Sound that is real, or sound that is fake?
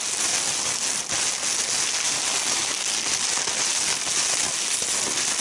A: real